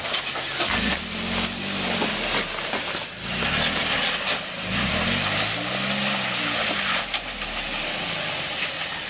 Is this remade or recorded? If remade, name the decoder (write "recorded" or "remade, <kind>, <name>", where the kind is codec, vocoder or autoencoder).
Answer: recorded